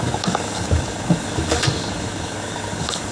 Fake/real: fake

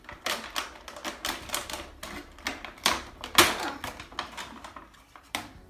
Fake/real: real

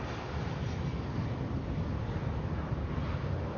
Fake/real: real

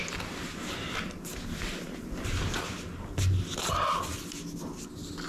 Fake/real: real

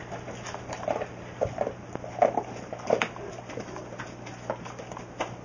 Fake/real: real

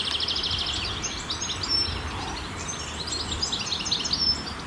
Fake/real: real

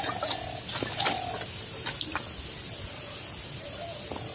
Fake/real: real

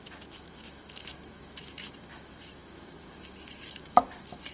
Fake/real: fake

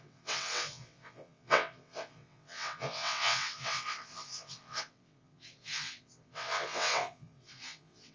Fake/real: fake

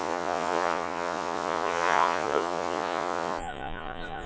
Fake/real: fake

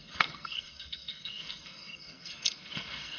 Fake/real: fake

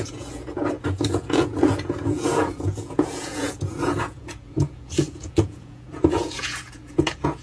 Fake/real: fake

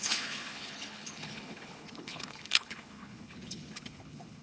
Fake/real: fake